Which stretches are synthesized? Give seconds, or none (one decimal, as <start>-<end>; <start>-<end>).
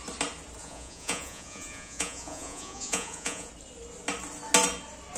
0.6-3.5